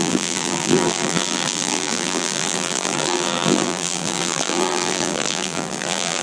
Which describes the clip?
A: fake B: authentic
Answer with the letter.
A